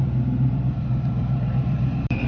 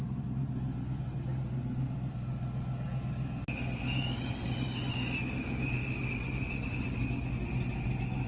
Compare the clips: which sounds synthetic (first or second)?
first